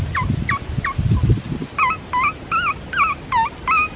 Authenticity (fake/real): real